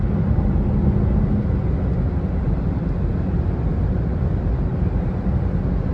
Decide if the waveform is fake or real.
real